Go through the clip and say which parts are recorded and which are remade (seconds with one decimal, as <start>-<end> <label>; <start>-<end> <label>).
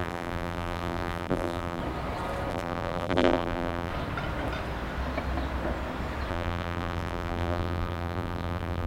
0.0-1.8 remade; 1.8-2.5 recorded; 2.5-3.9 remade; 3.9-6.3 recorded; 6.3-8.9 remade